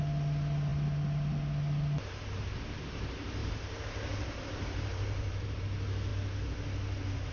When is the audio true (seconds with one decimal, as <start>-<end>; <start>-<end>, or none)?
0.0-3.4; 5.6-7.3

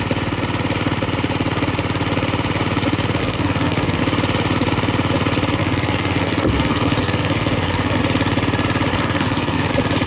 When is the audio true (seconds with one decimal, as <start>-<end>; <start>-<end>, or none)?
0.0-3.2; 4.0-5.6; 8.0-8.9; 9.7-10.1

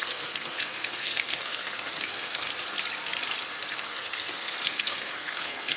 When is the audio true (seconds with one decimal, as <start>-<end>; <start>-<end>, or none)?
2.5-3.7

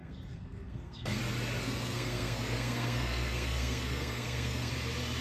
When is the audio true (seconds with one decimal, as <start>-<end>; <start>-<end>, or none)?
1.2-1.6; 4.7-5.2

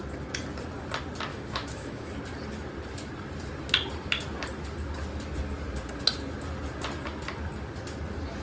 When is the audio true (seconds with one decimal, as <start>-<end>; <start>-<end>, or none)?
0.0-1.3; 2.1-8.4